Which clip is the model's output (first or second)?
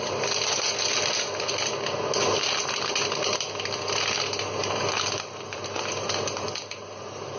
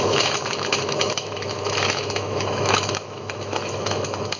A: second